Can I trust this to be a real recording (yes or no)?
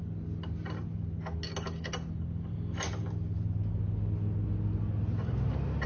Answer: yes